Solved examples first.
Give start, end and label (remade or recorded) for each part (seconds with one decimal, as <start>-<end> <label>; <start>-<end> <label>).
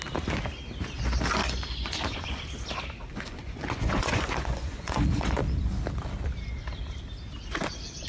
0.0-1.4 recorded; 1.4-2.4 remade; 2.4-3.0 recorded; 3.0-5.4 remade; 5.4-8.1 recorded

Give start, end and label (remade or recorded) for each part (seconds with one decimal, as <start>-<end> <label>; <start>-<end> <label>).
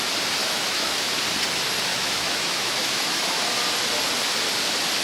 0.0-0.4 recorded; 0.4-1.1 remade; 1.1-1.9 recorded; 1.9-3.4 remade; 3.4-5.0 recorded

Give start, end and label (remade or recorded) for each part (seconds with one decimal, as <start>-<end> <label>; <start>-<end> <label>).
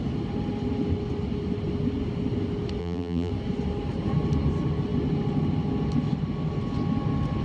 0.0-2.8 recorded; 2.8-3.3 remade; 3.3-7.4 recorded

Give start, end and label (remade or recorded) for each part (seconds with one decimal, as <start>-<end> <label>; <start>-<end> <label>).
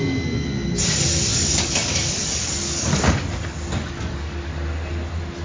0.0-1.3 recorded; 1.3-3.1 remade; 3.1-3.8 recorded; 3.8-4.5 remade; 4.5-5.4 recorded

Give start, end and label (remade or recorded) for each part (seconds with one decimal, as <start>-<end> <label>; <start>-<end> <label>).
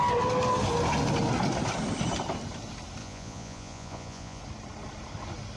0.0-3.0 recorded; 3.0-4.4 remade; 4.4-5.6 recorded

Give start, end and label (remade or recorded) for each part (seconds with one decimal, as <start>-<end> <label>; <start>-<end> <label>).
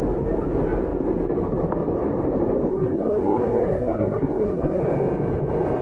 0.0-2.7 recorded; 2.7-4.8 remade; 4.8-5.8 recorded